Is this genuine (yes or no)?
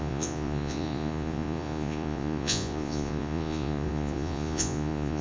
no